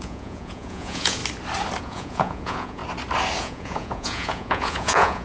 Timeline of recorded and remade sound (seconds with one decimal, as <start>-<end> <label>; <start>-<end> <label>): 0.0-1.2 remade; 1.2-1.8 recorded; 1.8-2.8 remade; 2.8-3.4 recorded; 3.4-5.2 remade